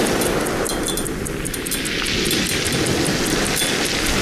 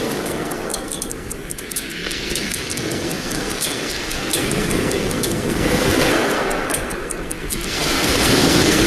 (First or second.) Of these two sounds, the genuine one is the first